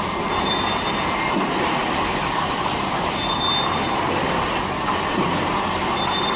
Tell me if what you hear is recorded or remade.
recorded